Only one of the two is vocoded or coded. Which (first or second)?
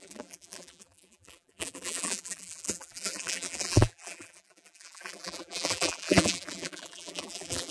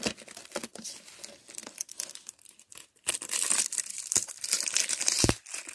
first